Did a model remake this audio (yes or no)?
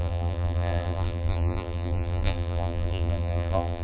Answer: yes